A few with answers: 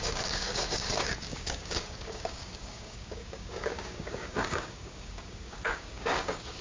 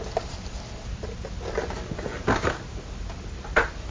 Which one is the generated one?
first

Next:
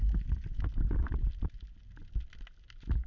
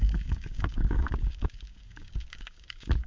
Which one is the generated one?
second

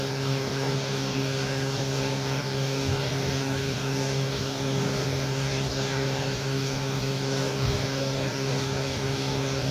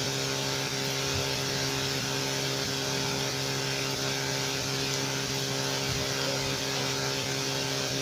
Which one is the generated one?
first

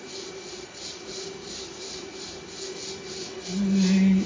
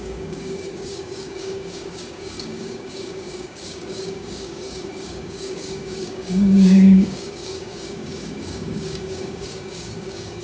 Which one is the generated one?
second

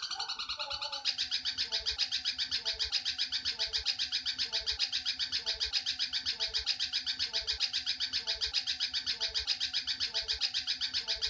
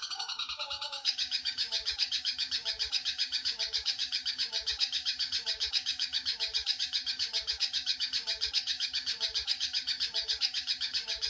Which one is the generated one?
second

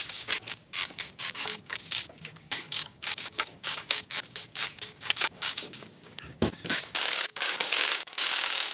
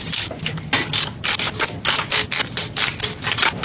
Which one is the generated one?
first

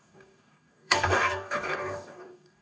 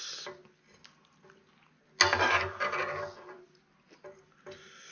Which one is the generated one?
first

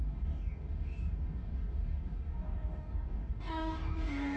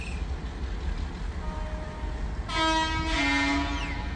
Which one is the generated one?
first